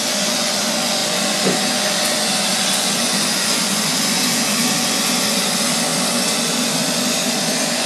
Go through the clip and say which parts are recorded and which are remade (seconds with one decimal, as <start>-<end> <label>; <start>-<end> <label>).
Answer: 0.0-7.9 remade